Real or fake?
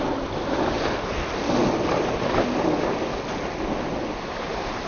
real